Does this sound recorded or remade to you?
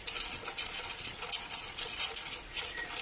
remade